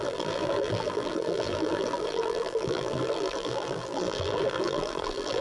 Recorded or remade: remade